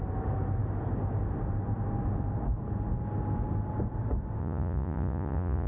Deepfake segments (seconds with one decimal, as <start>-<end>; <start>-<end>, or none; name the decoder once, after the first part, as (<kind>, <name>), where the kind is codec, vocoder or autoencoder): 4.4-5.7 (vocoder, Vocos)